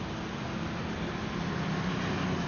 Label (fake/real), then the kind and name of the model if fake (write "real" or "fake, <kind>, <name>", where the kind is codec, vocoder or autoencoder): real